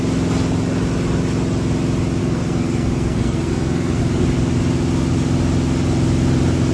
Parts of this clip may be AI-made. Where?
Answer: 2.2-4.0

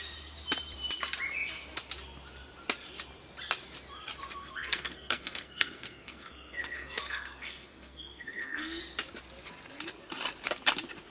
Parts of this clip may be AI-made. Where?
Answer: 4.4-8.8

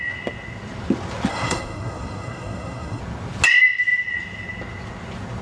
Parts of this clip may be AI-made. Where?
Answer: 1.3-3.0

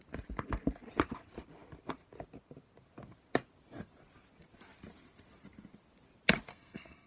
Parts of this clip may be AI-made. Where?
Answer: 6.5-7.1

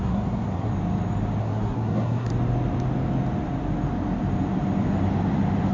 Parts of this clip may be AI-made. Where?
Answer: 0.0-0.7; 1.4-2.3

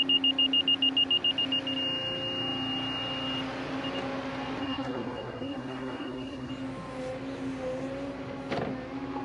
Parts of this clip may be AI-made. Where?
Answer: 4.6-6.5

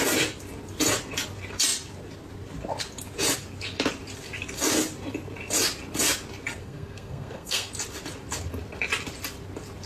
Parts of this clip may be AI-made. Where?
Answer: 6.6-7.7

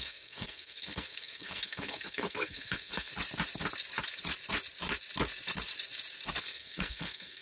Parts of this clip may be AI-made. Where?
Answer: 0.0-3.1; 6.4-7.4